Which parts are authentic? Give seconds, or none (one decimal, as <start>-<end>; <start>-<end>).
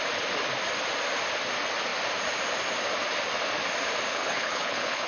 0.0-4.1